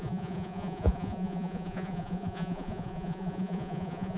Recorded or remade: remade